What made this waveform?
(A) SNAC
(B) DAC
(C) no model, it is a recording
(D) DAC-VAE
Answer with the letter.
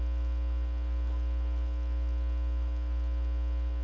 C